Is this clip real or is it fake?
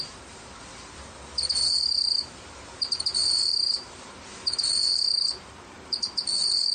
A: fake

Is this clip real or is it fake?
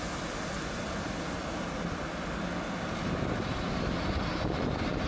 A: real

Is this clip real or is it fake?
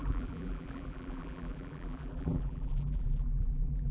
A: fake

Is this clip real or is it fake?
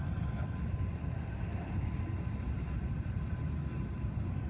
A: real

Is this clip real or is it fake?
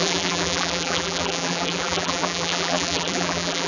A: fake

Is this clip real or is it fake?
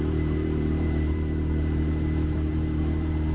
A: fake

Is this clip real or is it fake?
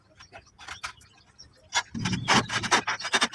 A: real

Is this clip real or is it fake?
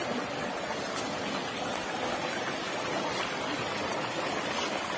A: real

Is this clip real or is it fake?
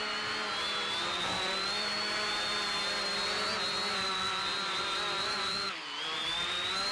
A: fake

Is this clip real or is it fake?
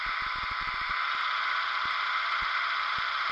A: fake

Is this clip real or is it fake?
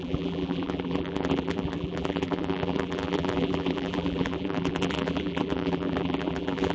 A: fake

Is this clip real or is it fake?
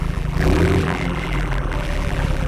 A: fake